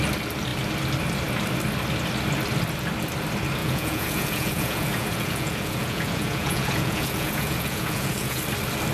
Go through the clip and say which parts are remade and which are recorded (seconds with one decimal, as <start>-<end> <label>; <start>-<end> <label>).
0.0-3.6 recorded; 3.6-8.4 remade; 8.4-8.9 recorded